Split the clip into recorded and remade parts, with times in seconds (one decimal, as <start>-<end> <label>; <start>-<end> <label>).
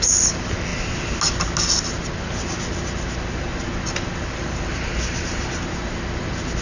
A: 0.0-6.6 recorded